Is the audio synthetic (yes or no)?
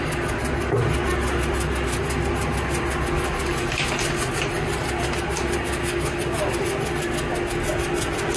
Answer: no